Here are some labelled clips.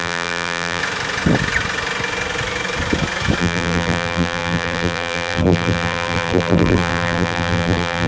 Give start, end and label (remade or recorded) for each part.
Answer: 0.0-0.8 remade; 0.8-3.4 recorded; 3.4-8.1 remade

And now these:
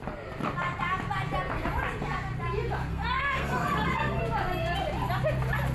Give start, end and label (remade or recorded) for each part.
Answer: 0.0-2.9 recorded; 2.9-4.2 remade; 4.2-5.7 recorded

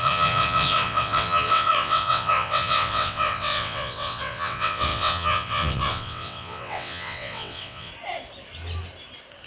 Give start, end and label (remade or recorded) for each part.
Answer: 0.0-7.9 remade; 7.9-9.5 recorded

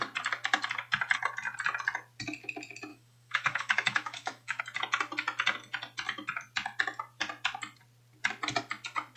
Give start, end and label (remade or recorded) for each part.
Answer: 0.0-2.9 recorded; 2.9-4.6 remade; 4.6-9.2 recorded

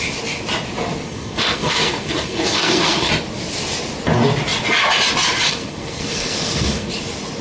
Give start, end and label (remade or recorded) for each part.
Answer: 0.0-1.0 recorded; 1.0-3.1 remade; 3.1-5.5 recorded; 5.5-6.9 remade; 6.9-7.4 recorded

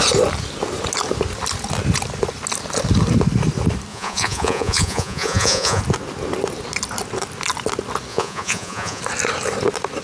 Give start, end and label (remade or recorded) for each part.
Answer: 0.0-3.9 recorded; 3.9-5.8 remade; 5.8-8.1 recorded; 8.1-9.0 remade; 9.0-10.0 recorded

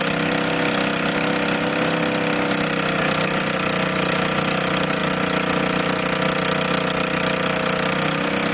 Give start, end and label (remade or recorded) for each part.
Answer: 0.0-8.5 recorded